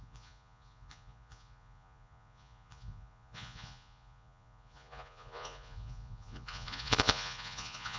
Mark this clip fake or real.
fake